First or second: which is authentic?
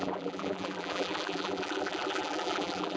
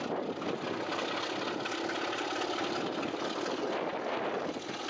second